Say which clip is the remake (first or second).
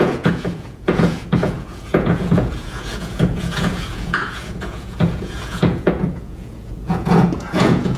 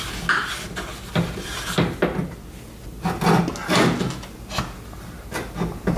first